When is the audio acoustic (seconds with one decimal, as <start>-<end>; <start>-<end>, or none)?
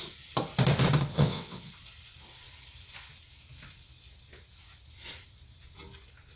0.0-1.1; 1.7-6.4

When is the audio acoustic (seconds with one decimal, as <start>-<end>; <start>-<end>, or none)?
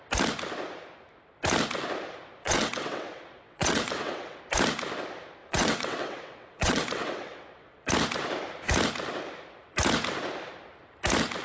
0.0-2.4; 4.4-5.4; 7.9-11.4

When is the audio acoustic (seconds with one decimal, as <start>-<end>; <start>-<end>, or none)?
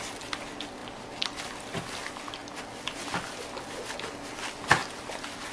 0.0-5.5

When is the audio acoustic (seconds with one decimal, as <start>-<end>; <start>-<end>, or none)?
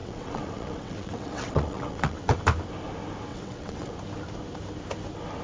2.4-3.3; 3.9-5.4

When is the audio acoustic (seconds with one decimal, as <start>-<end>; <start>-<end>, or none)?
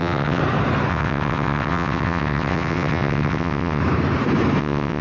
0.4-0.9; 3.8-4.6